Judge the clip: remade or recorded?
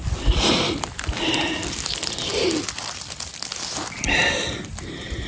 recorded